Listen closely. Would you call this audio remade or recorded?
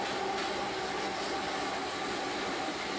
recorded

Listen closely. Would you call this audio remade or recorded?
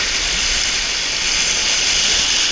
recorded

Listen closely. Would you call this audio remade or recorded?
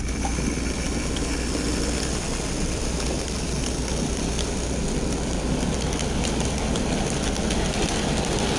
recorded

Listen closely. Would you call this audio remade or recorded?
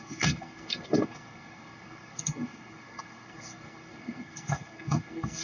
remade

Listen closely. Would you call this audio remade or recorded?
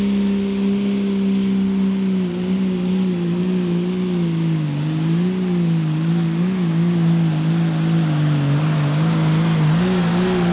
recorded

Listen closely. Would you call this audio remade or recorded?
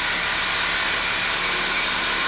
recorded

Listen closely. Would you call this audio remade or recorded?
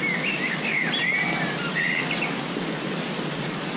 recorded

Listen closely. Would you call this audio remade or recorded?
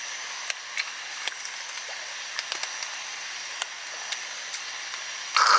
recorded